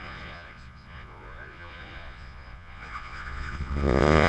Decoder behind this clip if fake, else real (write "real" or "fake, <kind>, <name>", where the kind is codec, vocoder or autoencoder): fake, vocoder, Vocos